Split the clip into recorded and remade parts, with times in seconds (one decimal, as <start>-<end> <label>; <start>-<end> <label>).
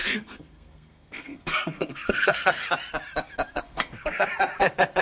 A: 0.0-2.6 remade; 2.6-3.5 recorded; 3.5-4.3 remade; 4.3-5.0 recorded